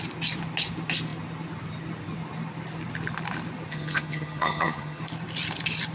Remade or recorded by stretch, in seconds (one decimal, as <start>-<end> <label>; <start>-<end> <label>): 0.0-3.7 recorded; 3.7-5.0 remade; 5.0-5.9 recorded